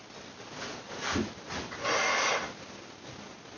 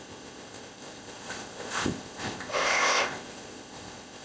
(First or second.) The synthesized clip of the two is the second